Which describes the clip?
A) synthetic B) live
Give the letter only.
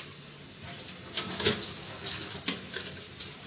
B